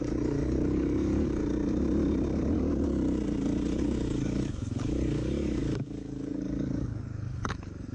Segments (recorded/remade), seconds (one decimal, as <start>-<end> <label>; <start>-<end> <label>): 0.0-1.4 remade; 1.4-3.7 recorded; 3.7-7.9 remade